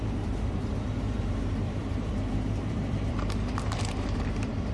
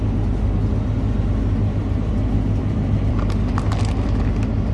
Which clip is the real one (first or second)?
second